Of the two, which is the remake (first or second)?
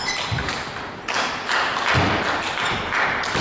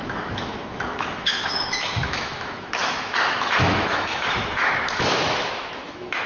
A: second